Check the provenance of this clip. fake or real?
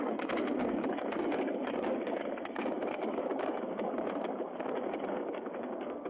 fake